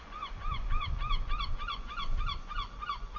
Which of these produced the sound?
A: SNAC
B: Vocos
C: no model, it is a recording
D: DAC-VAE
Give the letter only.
B